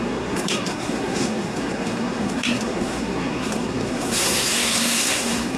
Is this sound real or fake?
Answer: fake